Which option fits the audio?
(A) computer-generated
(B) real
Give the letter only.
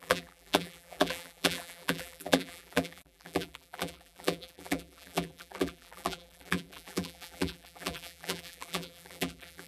A